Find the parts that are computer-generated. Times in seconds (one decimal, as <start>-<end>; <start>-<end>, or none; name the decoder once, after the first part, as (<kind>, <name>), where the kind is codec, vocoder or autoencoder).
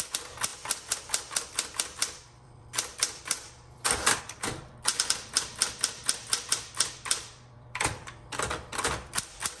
0.0-8.7 (vocoder, BigVGAN v2); 9.2-9.6